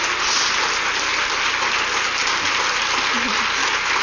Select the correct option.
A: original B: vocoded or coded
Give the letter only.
A